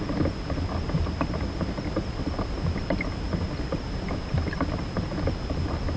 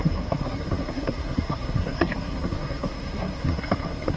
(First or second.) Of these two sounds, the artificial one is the second